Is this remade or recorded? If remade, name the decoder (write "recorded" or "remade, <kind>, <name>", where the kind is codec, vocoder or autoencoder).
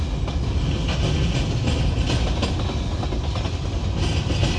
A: recorded